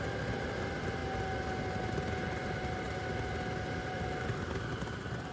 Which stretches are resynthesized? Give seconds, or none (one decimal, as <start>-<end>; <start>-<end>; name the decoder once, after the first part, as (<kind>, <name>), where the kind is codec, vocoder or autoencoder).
3.8-5.3 (vocoder, BigVGAN v2)